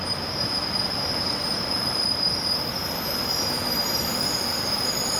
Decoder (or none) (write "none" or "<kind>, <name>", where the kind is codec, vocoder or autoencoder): vocoder, BigVGAN v2